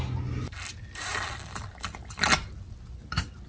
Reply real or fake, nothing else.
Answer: real